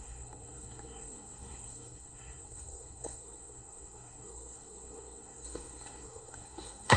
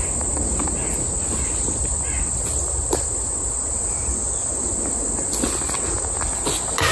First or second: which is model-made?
first